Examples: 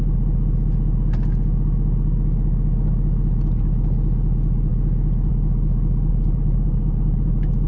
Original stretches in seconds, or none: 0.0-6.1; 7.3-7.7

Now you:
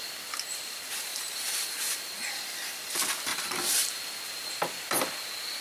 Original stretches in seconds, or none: 0.0-1.1; 2.3-3.3; 4.0-5.6

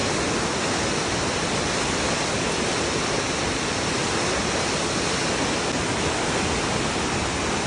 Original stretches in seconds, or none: 0.0-7.7

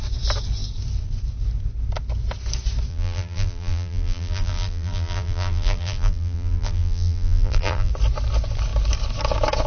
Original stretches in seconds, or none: 0.0-2.9; 7.9-9.7

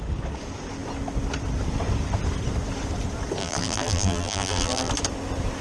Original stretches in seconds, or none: 0.0-3.4; 4.9-5.6

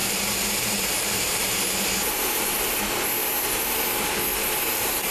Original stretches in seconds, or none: 2.8-4.3

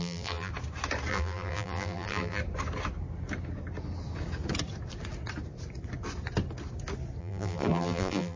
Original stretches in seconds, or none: 0.5-1.1; 2.4-7.2